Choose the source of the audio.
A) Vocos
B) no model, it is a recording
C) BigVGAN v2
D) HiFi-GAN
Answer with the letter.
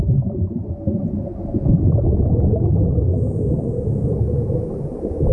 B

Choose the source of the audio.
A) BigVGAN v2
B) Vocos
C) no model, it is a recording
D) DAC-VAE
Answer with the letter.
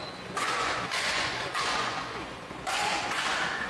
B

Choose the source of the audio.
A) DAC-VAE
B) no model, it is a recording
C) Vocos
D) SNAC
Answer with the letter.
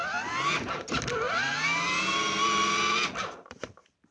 B